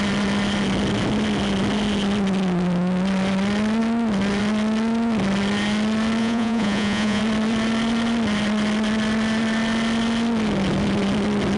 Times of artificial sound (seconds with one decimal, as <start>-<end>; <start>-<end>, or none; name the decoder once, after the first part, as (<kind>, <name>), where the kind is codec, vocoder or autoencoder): 6.2-7.2 (vocoder, Vocos)